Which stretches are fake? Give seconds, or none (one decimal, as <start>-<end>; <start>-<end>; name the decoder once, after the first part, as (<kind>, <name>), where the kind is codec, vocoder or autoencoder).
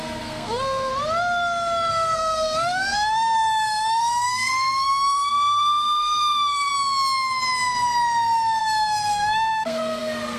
0.0-0.9 (codec, SNAC); 1.9-6.7; 8.6-10.4